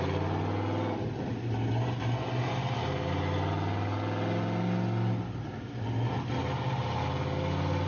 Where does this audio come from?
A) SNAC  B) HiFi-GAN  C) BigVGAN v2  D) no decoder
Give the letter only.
D